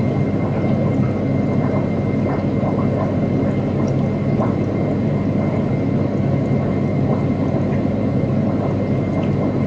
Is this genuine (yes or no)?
yes